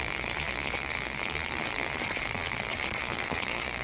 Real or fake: fake